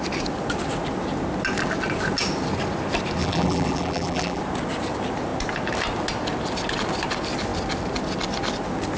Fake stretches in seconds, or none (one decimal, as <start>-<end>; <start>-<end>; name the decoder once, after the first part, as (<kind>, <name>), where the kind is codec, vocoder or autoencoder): 3.2-4.4 (vocoder, BigVGAN v2)